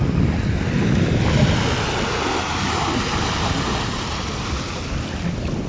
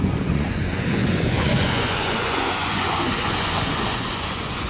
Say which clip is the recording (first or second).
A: first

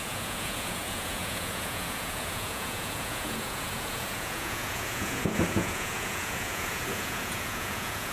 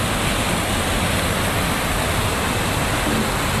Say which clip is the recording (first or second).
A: second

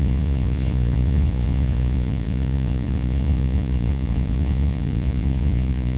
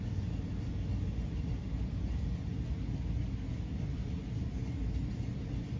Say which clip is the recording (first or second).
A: second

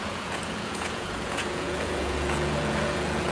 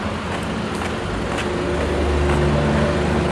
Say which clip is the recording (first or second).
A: second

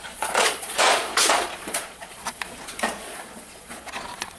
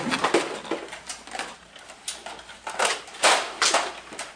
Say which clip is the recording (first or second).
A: second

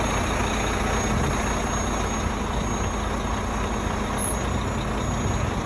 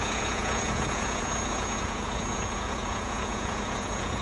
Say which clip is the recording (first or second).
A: first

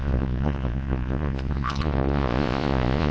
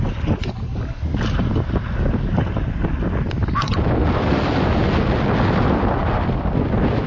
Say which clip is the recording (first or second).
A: second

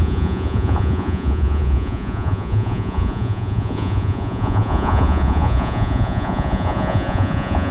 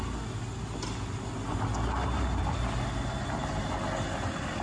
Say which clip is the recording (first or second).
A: second